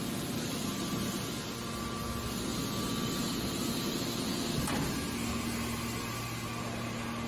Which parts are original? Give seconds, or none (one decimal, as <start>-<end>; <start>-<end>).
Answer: 0.0-7.3